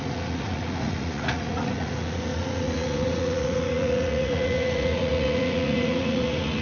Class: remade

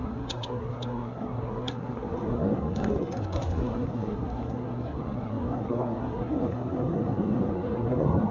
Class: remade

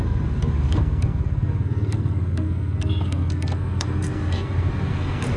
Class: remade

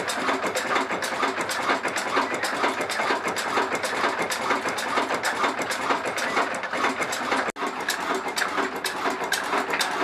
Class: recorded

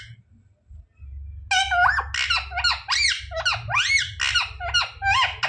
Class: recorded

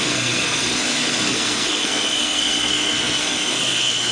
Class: remade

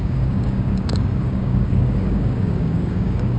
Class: remade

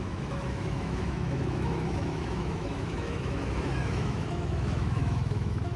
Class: remade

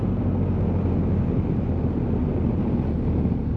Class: recorded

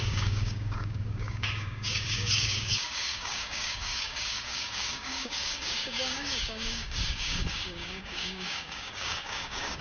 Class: remade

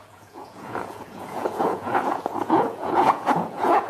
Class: remade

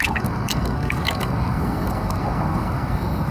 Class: remade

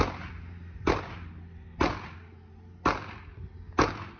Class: recorded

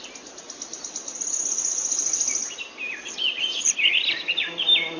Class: recorded